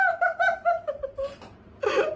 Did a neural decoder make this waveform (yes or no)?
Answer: no